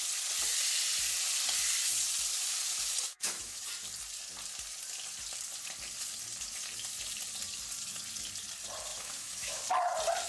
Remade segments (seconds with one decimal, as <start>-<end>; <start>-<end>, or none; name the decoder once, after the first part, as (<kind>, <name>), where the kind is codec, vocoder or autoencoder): 3.1-3.7 (autoencoder, DAC-VAE); 8.9-9.6